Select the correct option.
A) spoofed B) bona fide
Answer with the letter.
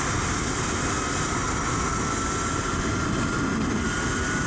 B